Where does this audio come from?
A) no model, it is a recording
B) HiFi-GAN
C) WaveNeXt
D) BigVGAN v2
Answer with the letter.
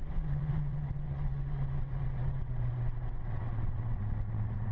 C